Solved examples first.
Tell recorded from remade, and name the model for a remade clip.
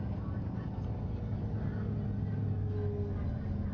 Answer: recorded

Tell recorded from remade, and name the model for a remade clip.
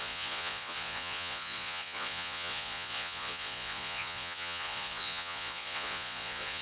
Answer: remade, vocoder, Vocos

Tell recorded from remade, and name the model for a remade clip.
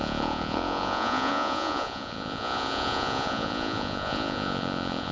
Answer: remade, vocoder, Vocos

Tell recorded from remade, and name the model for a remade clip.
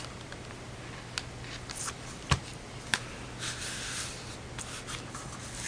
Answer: recorded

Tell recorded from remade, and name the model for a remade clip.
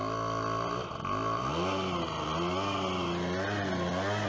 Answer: recorded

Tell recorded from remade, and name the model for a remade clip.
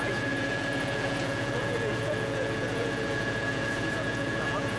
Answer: remade, vocoder, Vocos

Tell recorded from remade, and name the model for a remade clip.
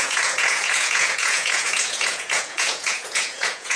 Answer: remade, vocoder, Vocos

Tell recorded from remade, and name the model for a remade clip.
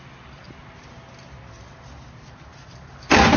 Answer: recorded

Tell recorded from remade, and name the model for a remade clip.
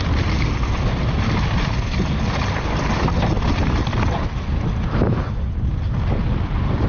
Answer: recorded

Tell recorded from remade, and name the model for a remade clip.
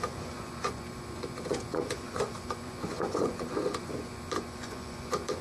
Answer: remade, vocoder, Vocos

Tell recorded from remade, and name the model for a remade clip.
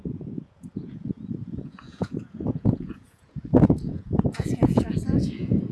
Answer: remade, vocoder, Vocos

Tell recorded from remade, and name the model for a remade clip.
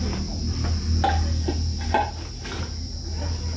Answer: recorded